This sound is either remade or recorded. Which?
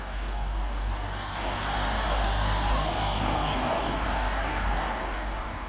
remade